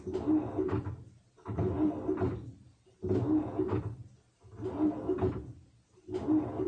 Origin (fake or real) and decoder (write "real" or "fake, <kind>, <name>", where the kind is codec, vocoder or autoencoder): real